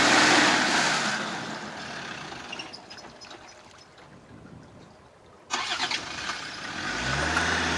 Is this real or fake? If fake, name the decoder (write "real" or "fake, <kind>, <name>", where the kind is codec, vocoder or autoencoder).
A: real